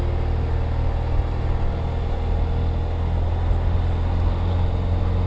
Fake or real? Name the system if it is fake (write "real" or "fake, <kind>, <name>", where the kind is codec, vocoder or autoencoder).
real